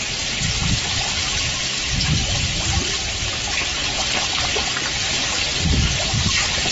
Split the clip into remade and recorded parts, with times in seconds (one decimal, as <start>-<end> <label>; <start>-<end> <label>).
0.0-6.7 recorded